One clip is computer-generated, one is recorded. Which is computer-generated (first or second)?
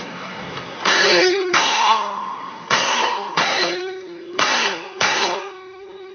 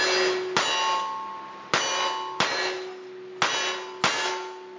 first